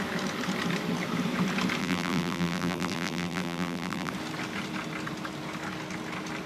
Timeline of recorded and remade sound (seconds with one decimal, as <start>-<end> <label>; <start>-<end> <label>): 0.0-1.8 recorded; 1.8-4.1 remade; 4.1-6.5 recorded